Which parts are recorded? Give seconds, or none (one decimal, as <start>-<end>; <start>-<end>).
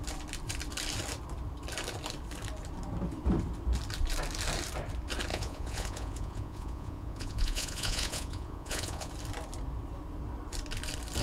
0.0-5.3; 9.1-11.2